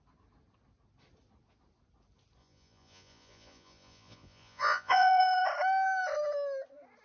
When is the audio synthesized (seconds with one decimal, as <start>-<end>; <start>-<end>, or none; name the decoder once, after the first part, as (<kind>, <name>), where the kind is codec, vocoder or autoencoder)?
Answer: 2.4-5.2 (vocoder, Vocos)